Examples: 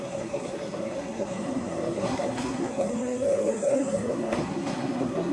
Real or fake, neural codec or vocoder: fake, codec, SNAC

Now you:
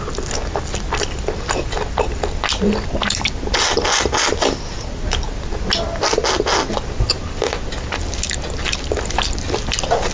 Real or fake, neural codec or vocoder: real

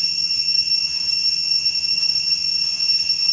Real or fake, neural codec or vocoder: fake, vocoder, HiFi-GAN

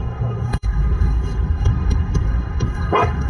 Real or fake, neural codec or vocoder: fake, codec, SNAC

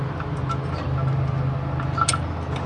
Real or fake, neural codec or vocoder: real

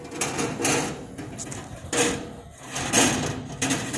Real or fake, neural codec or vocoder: real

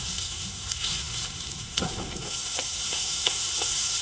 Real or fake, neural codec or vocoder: fake, codec, SNAC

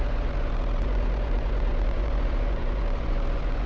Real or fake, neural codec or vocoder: fake, vocoder, Vocos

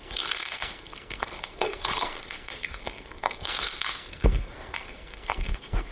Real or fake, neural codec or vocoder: fake, codec, SNAC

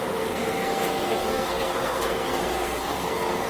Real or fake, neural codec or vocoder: fake, codec, SNAC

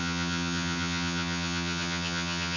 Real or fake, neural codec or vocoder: fake, vocoder, HiFi-GAN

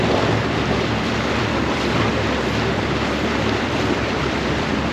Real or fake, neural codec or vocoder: fake, vocoder, BigVGAN v2